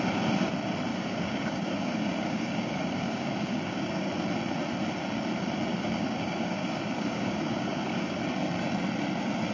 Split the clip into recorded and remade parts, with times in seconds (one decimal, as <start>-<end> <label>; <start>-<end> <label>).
0.0-0.9 recorded; 0.9-4.1 remade; 4.1-5.7 recorded; 5.7-8.2 remade; 8.2-9.5 recorded